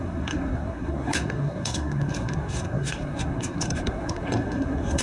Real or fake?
fake